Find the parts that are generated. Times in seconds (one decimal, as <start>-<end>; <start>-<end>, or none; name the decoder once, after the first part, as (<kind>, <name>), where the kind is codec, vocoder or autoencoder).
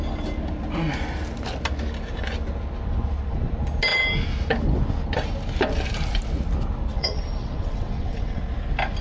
6.9-8.4 (vocoder, WaveNeXt)